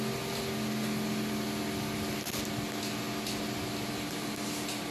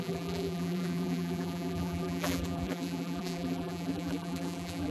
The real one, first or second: first